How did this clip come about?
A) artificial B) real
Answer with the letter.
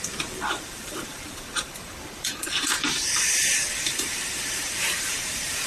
A